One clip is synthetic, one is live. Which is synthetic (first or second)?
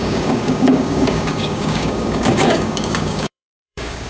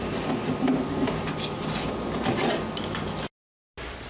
first